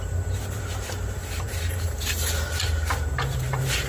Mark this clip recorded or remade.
remade